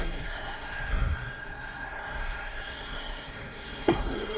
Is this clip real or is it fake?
fake